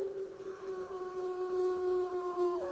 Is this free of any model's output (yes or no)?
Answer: no